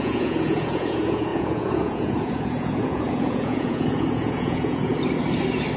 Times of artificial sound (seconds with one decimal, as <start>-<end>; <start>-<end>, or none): 0.0-4.9